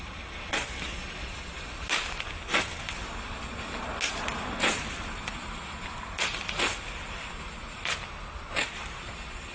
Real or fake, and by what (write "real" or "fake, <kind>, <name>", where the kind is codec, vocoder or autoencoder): real